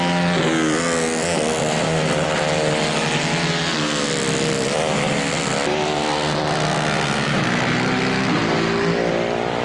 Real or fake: real